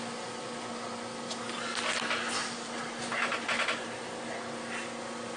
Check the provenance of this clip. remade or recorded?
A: recorded